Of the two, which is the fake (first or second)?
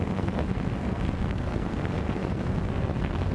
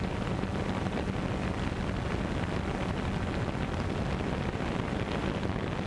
first